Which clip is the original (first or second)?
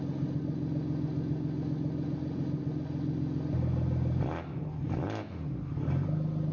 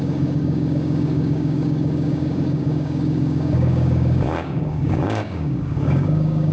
first